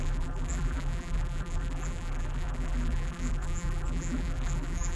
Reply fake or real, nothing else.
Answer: fake